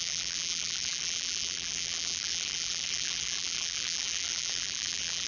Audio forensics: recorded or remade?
remade